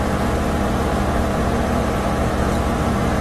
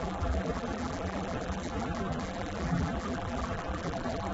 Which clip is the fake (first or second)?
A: second